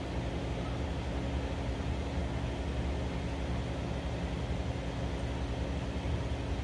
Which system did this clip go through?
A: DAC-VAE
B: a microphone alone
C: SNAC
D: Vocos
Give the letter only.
B